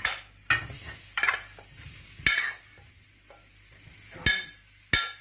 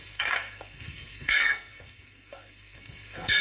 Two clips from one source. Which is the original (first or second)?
first